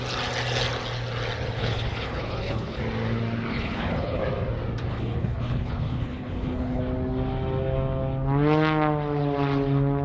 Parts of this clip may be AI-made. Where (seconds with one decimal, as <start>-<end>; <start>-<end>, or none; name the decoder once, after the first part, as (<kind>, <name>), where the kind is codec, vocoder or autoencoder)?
1.6-2.8 (codec, HILCodec); 3.5-4.2; 4.9-6.8